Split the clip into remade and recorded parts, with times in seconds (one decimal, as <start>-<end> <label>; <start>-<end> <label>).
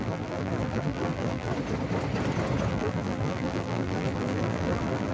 0.0-1.5 remade; 1.5-2.7 recorded; 2.7-5.1 remade